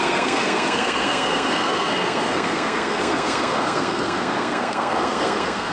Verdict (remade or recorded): remade